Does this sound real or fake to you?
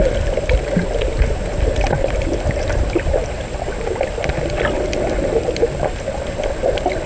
real